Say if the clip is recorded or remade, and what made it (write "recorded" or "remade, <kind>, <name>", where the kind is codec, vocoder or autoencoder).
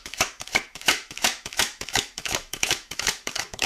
remade, autoencoder, DAC-VAE